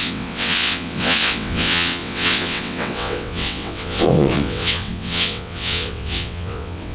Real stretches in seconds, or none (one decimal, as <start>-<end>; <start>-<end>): none